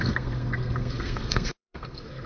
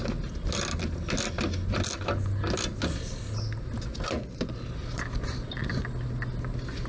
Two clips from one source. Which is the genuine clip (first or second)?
second